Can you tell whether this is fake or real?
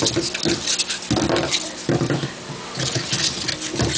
real